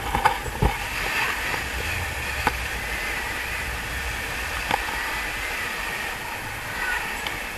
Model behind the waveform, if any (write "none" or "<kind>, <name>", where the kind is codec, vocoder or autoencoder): none